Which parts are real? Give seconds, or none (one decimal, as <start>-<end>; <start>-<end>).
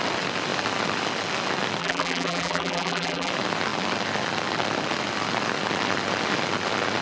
0.0-1.8; 3.3-7.0